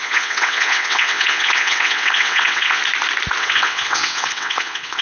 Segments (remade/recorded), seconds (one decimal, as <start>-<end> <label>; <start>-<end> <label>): 0.0-2.8 remade; 2.8-3.4 recorded; 3.4-5.0 remade